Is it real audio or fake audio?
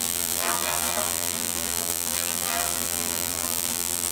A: fake